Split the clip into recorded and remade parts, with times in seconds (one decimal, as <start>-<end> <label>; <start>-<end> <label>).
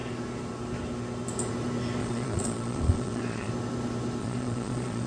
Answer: 0.0-2.0 recorded; 2.0-3.5 remade; 3.5-4.2 recorded; 4.2-5.1 remade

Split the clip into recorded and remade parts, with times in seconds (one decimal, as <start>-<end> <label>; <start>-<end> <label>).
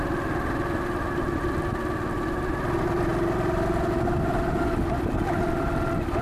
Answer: 0.0-6.2 recorded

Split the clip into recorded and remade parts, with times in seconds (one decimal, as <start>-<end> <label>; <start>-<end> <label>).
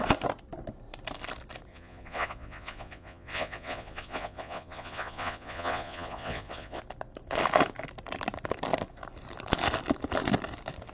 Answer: 0.0-1.7 recorded; 1.7-6.8 remade; 6.8-10.9 recorded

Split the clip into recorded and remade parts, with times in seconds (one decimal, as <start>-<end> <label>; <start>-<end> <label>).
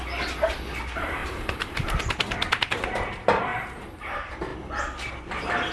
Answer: 0.0-1.2 recorded; 1.2-1.8 remade; 1.8-3.5 recorded; 3.5-4.0 remade; 4.0-5.7 recorded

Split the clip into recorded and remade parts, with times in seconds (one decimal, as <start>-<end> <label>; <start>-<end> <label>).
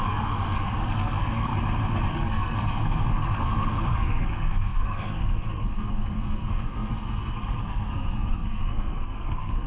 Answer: 0.0-1.5 remade; 1.5-2.1 recorded; 2.1-9.7 remade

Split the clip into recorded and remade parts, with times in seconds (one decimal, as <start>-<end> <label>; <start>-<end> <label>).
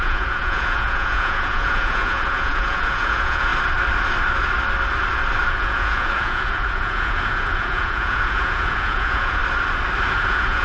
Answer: 0.0-3.5 remade; 3.5-5.5 recorded; 5.5-9.4 remade; 9.4-10.1 recorded; 10.1-10.6 remade